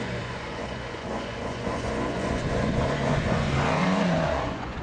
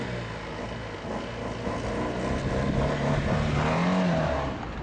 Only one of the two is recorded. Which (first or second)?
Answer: second